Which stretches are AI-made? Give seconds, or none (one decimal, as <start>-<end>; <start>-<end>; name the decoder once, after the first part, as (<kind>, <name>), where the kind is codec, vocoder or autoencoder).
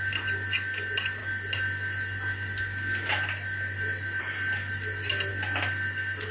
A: none